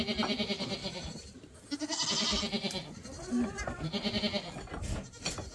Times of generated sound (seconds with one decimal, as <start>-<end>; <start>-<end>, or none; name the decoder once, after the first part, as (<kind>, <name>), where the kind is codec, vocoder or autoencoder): 0.8-1.4 (vocoder, BigVGAN v2); 2.3-4.2